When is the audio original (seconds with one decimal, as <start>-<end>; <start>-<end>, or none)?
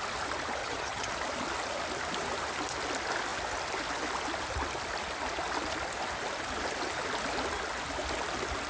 0.0-0.6; 1.1-8.7